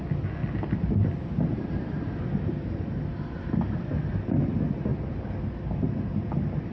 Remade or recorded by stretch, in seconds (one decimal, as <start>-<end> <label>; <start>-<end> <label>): 0.0-0.4 recorded; 0.4-4.4 remade; 4.4-6.7 recorded